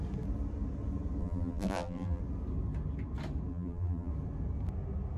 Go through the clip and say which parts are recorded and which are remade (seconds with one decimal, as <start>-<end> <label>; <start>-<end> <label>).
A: 0.0-1.2 recorded; 1.2-2.2 remade; 2.2-3.5 recorded; 3.5-4.1 remade; 4.1-5.2 recorded